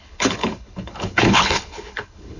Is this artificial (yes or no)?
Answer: yes